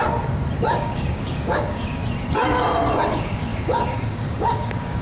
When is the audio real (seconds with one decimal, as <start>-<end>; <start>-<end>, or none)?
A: 0.0-0.7; 2.0-3.1